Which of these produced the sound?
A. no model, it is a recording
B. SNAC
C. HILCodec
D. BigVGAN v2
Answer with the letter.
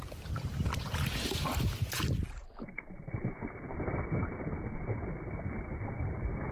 A